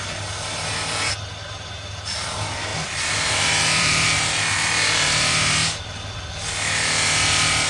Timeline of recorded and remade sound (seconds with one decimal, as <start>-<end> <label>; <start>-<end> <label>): 0.0-2.7 recorded; 2.7-5.8 remade; 5.8-7.7 recorded